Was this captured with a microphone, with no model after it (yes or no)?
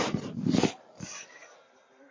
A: no